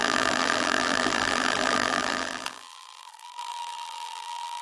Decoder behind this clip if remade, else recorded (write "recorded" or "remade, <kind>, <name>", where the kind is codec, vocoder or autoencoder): remade, vocoder, BigVGAN v2